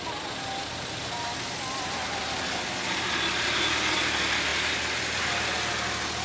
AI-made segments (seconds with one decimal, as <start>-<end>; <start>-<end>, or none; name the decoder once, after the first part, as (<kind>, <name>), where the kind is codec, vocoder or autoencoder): none